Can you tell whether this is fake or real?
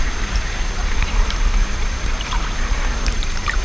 fake